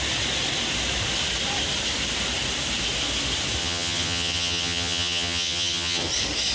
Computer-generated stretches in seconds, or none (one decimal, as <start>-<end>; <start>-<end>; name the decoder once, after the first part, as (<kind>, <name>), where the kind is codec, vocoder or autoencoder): 3.6-6.1 (vocoder, HiFi-GAN)